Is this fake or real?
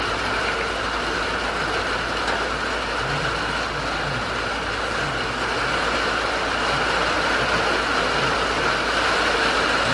real